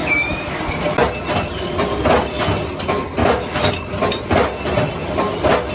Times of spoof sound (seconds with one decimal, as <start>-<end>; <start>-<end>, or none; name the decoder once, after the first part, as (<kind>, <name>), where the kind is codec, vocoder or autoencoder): 0.0-0.6 (autoencoder, DAC-VAE); 3.2-3.7